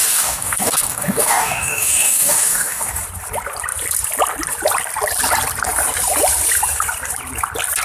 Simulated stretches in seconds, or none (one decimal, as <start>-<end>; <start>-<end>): 0.0-3.0